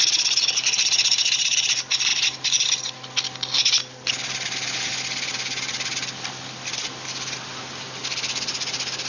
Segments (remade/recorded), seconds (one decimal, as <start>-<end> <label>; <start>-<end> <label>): 0.0-9.1 recorded